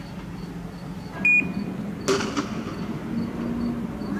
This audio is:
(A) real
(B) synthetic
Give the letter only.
A